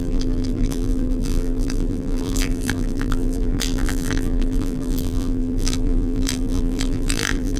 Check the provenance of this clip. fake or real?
fake